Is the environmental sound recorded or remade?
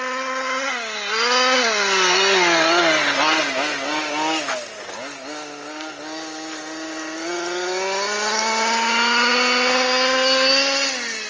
recorded